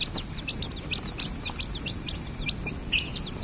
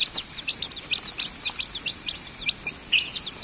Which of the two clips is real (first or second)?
first